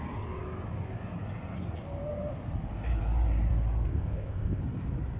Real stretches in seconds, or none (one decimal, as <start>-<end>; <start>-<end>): 0.0-3.9; 4.6-5.2